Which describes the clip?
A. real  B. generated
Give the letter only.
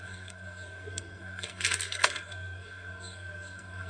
B